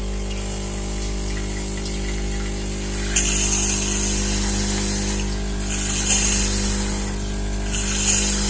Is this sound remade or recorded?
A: recorded